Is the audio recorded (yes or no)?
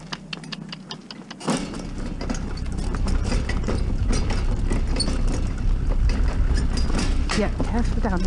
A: yes